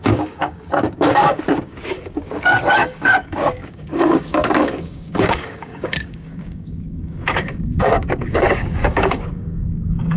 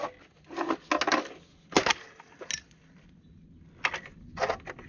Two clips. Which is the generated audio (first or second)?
first